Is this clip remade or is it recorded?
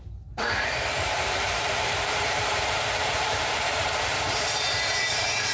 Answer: remade